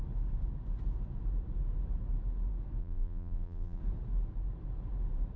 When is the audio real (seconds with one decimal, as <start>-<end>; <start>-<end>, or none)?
0.0-2.8; 3.8-5.4